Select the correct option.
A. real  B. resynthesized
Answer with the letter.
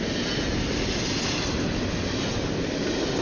A